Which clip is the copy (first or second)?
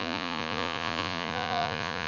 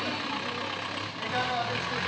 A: first